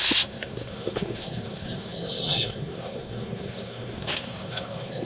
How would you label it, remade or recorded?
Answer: remade